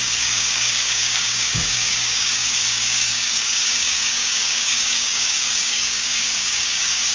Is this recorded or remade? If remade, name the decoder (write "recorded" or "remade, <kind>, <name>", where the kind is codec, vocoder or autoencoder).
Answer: remade, codec, DAC